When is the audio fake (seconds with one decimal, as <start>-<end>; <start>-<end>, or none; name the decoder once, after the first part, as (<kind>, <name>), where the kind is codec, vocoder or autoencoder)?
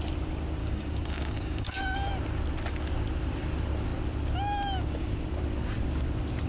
0.6-2.1 (codec, DAC)